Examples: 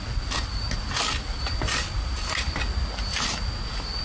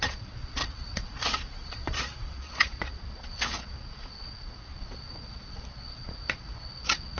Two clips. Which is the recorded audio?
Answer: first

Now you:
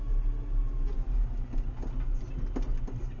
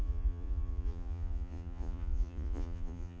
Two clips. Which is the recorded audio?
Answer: first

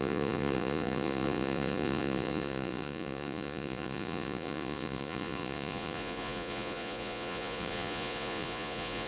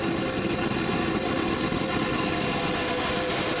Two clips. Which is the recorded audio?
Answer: second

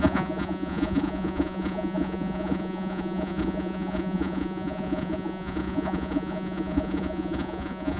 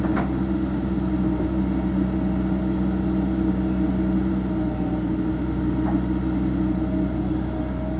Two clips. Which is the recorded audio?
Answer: second